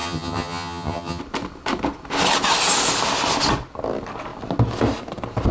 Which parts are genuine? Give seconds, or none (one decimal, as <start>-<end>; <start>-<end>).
1.2-5.5